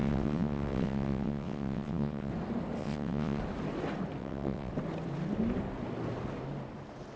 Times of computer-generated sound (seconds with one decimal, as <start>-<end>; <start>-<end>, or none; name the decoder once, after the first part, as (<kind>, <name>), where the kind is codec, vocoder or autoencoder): 0.0-2.3 (vocoder, WaveNeXt); 2.8-3.4; 4.2-4.7